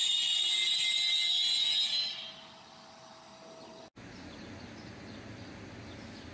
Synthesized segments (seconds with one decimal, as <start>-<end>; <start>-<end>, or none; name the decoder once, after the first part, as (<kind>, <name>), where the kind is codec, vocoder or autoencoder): none